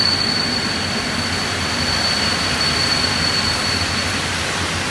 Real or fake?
real